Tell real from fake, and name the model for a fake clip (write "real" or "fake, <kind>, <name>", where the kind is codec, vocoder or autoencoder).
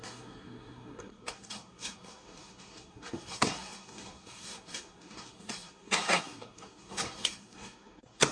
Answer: fake, codec, SNAC